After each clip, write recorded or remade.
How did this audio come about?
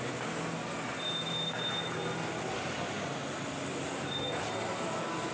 recorded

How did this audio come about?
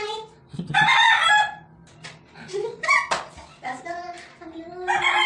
recorded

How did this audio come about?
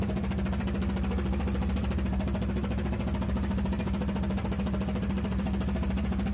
recorded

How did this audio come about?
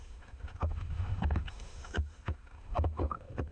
remade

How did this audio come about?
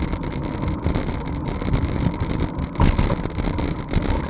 remade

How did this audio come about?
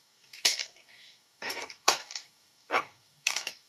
remade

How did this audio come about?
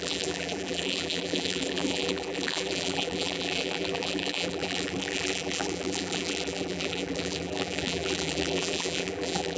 remade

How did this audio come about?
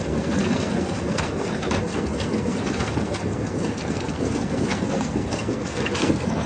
remade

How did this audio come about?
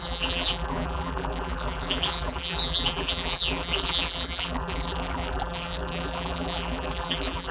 remade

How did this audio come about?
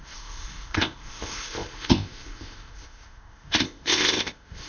remade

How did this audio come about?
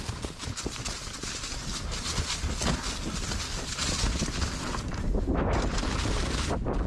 recorded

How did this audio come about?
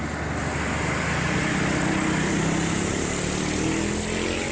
recorded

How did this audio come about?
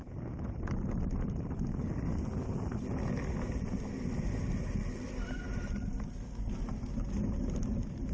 recorded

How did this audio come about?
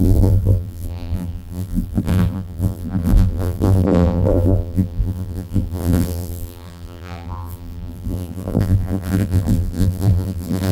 remade